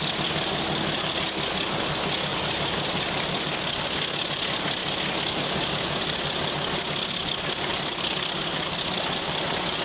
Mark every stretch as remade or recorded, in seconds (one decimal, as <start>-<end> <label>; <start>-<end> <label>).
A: 0.0-9.8 recorded